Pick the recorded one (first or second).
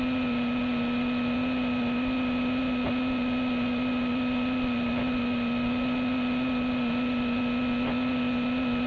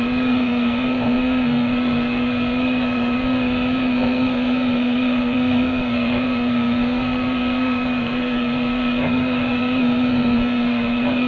first